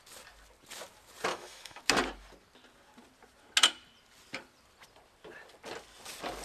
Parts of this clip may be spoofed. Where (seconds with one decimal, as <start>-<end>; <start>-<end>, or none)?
1.3-1.8